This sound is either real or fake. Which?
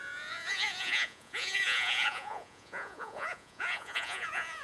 fake